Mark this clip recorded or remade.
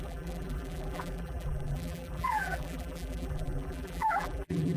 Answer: remade